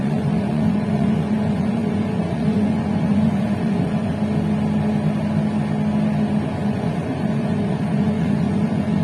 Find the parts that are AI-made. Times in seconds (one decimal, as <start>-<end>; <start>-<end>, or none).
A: 0.0-4.1; 6.6-9.0